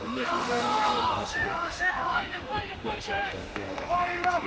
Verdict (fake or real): fake